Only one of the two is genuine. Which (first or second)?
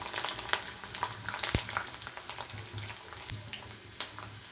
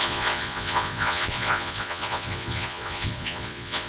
first